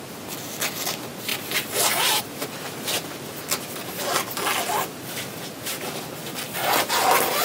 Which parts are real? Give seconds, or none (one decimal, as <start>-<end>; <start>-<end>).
0.0-1.3; 2.2-7.4